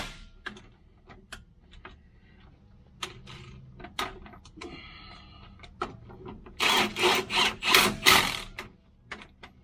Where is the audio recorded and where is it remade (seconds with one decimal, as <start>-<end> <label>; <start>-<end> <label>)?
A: 0.0-9.6 recorded